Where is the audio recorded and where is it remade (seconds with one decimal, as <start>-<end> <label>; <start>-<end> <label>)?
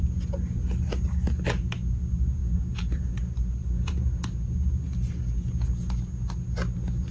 0.0-7.1 recorded